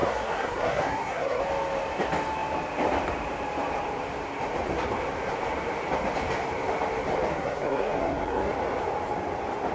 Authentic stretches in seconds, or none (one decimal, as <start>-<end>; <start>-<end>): 1.4-7.3; 8.5-9.7